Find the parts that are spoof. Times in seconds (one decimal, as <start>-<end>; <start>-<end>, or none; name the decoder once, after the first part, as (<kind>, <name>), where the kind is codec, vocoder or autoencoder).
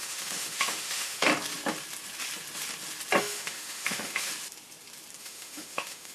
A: 0.0-1.3 (autoencoder, DAC-VAE); 3.2-4.3; 5.2-6.1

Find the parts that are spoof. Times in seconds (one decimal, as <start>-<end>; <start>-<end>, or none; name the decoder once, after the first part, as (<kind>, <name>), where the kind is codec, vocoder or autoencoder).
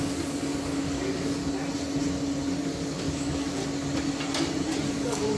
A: 0.0-1.4 (codec, DAC); 2.5-3.6; 4.9-5.4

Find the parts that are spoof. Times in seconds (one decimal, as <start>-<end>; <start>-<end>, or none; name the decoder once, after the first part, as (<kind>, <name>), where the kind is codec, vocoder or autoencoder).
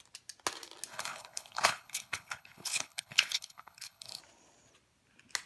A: 0.9-4.2 (codec, HILCodec)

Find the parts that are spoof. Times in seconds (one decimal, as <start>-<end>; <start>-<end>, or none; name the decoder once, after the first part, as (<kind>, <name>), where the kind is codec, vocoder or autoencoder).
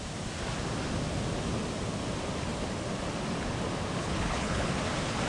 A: 4.0-4.7 (codec, HILCodec)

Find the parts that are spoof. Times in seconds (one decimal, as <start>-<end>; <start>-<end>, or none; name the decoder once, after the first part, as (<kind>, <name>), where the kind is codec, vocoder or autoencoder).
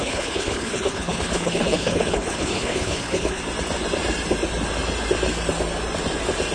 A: 0.0-3.4 (codec, HILCodec)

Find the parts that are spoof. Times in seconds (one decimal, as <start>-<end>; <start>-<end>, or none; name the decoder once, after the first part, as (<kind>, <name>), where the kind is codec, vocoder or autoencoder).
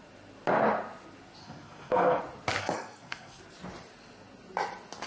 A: 1.4-2.2 (codec, SNAC); 2.6-3.4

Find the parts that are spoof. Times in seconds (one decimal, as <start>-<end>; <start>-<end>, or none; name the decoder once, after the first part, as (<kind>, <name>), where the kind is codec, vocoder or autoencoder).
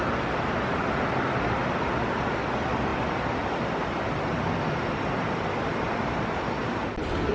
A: none